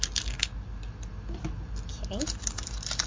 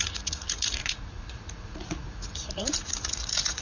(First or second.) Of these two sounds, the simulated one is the second